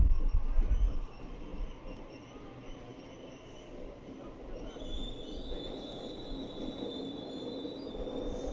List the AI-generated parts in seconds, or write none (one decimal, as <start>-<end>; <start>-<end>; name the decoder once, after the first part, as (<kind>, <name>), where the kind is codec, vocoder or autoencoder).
none